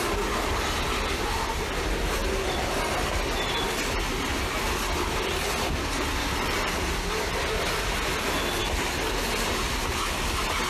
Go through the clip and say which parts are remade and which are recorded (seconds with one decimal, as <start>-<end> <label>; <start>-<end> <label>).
0.0-10.7 recorded